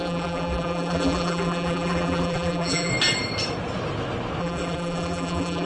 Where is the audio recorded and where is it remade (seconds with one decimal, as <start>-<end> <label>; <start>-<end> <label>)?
0.0-2.9 remade; 2.9-4.4 recorded; 4.4-5.7 remade